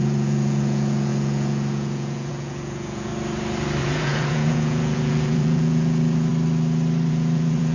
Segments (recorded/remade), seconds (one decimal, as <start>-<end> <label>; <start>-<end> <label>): 0.0-3.1 remade; 3.1-3.8 recorded; 3.8-6.3 remade; 6.3-7.1 recorded; 7.1-7.7 remade